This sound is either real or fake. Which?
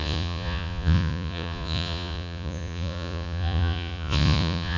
fake